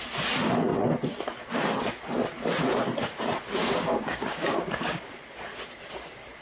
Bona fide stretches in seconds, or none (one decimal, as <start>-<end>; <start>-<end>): 0.0-3.6; 5.0-6.4